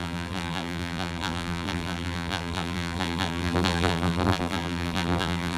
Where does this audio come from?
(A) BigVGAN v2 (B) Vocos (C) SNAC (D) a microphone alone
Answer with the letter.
A